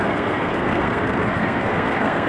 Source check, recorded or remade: remade